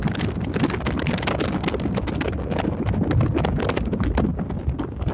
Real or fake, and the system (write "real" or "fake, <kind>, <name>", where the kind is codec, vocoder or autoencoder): real